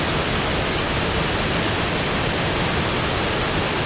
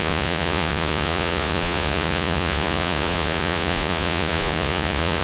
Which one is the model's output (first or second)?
second